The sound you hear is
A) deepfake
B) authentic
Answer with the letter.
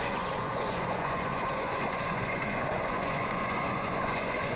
A